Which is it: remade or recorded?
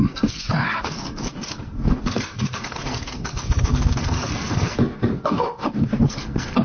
remade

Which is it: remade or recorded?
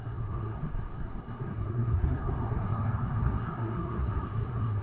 remade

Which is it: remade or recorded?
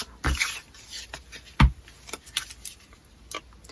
recorded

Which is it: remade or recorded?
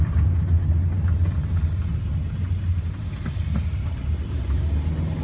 recorded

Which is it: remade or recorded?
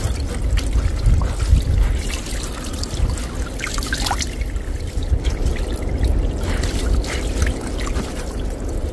recorded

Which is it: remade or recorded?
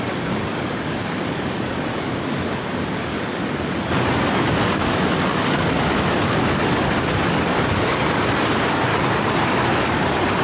remade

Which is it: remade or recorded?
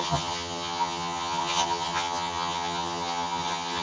remade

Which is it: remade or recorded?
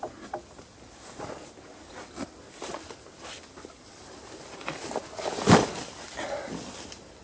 recorded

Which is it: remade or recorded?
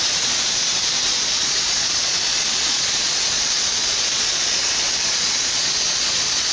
remade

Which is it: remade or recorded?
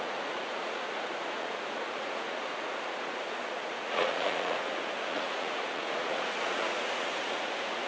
remade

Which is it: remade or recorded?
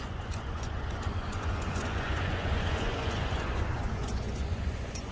remade